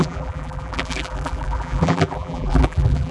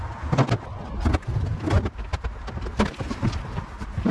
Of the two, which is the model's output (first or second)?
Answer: first